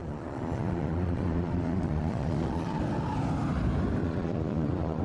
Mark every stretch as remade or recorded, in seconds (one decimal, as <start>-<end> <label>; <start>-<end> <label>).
0.0-2.8 remade; 2.8-4.0 recorded; 4.0-5.0 remade